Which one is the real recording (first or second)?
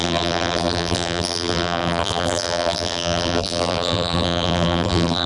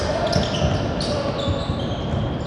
second